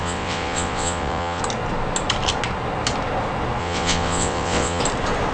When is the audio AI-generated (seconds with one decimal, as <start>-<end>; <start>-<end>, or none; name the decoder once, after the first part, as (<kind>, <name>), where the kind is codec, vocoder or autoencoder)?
0.0-1.4 (vocoder, WaveNeXt); 3.6-4.8